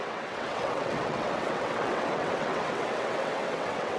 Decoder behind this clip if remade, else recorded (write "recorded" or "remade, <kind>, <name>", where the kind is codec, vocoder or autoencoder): remade, vocoder, WaveNeXt